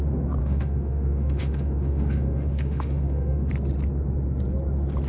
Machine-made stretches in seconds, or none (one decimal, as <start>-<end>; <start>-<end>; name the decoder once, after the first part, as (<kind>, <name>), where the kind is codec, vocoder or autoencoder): 0.4-3.5 (autoencoder, DAC-VAE)